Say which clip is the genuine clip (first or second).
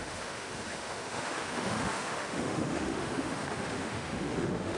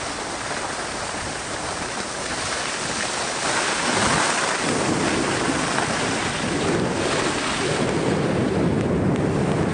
second